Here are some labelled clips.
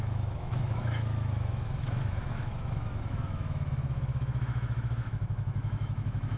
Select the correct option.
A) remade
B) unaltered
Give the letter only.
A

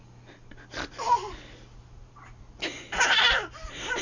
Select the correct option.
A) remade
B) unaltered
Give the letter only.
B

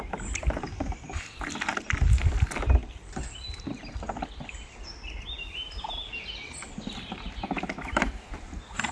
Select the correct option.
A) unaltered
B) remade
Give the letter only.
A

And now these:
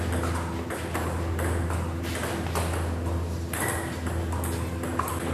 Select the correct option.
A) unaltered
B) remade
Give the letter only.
A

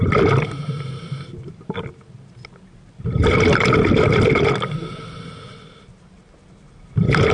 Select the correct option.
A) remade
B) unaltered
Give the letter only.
B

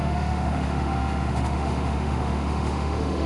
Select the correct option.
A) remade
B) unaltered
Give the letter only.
A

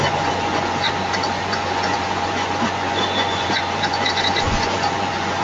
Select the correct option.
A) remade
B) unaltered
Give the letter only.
A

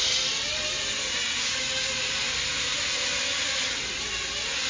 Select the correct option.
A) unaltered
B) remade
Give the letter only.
A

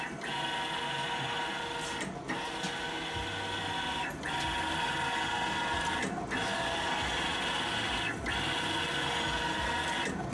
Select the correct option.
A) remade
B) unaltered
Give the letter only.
B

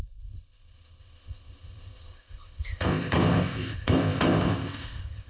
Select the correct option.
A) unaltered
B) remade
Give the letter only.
B